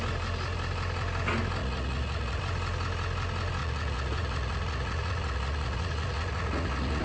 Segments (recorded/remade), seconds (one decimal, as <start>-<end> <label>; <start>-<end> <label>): 0.0-1.6 recorded; 1.6-2.4 remade; 2.4-3.6 recorded; 3.6-7.0 remade